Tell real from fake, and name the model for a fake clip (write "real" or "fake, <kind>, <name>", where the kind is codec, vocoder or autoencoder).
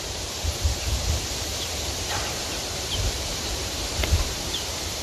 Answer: fake, vocoder, BigVGAN v2